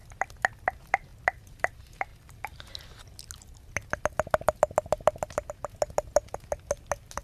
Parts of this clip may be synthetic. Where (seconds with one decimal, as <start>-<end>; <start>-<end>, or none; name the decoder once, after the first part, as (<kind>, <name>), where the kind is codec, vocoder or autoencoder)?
none